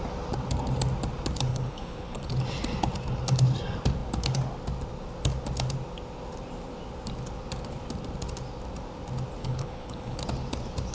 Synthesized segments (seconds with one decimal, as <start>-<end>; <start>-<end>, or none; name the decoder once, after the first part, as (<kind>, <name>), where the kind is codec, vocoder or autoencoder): 1.5-2.3 (codec, HILCodec); 9.4-10.2